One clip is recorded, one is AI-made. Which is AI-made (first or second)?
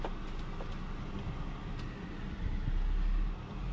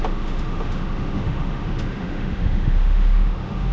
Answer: second